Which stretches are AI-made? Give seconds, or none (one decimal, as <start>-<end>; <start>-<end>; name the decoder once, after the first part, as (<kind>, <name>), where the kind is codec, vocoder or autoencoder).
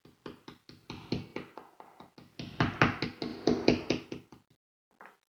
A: 1.3-2.1 (vocoder, BigVGAN v2); 3.3-4.5